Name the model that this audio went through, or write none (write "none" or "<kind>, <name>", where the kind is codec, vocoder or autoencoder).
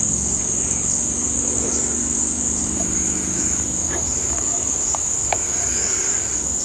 codec, DAC